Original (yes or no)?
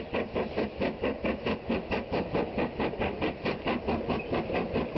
yes